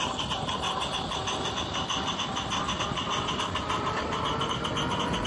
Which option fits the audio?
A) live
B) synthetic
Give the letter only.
A